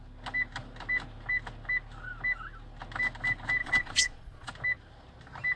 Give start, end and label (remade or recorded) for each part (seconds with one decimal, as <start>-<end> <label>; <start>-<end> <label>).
0.0-3.6 recorded; 3.6-4.5 remade; 4.5-5.6 recorded